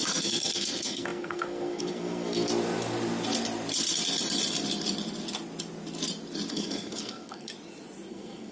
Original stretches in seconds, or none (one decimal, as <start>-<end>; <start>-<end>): 2.5-6.5; 7.5-8.1